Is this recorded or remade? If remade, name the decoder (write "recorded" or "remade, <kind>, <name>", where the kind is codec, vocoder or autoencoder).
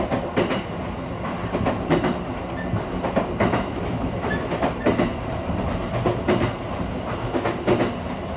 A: recorded